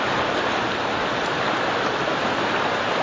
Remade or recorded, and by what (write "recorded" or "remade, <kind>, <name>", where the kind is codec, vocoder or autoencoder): recorded